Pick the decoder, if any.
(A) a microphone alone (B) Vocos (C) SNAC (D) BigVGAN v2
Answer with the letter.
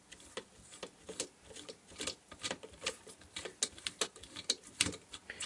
A